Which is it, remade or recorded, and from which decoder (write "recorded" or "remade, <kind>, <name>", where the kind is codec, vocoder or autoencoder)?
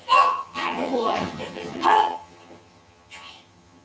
remade, vocoder, HiFi-GAN